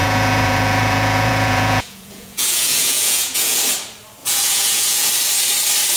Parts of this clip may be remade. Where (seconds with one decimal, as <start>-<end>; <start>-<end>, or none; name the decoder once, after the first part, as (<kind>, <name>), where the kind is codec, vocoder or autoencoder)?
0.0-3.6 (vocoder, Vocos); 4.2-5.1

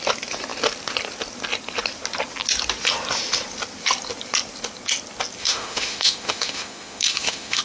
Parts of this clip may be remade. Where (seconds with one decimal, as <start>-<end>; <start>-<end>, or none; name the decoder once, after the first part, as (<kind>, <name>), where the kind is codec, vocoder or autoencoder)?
5.4-7.6 (autoencoder, DAC-VAE)

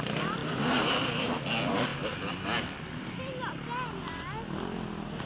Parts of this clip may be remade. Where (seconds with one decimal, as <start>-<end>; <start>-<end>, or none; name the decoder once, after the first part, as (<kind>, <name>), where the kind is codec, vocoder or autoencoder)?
0.4-1.3 (vocoder, BigVGAN v2)

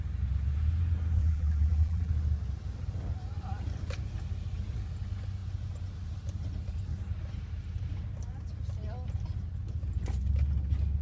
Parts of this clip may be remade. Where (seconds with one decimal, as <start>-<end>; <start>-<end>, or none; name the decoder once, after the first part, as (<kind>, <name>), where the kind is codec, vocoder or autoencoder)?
1.2-2.1 (vocoder, BigVGAN v2)

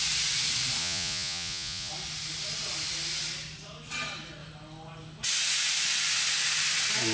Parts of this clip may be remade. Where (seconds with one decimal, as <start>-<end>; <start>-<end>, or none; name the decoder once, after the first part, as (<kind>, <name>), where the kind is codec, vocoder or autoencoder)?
0.8-1.9 (vocoder, Vocos)